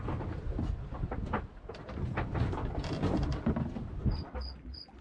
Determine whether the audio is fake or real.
real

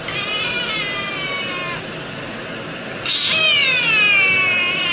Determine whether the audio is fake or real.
real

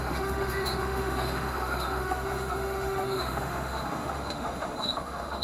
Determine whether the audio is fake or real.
fake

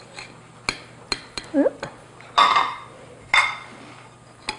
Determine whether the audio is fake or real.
real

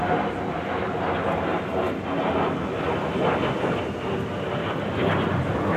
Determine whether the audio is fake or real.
real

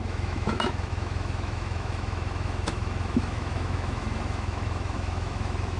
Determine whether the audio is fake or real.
fake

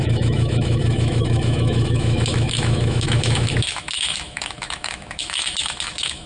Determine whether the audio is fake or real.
fake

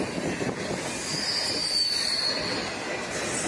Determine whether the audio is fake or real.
real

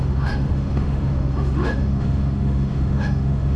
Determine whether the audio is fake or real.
fake